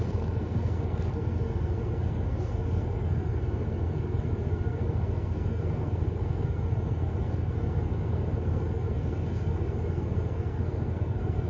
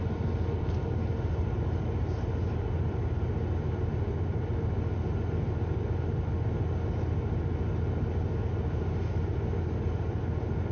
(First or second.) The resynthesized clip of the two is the first